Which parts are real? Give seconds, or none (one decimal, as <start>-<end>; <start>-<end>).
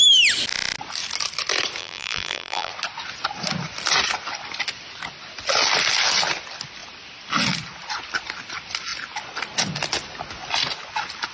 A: 0.0-1.8; 2.7-11.3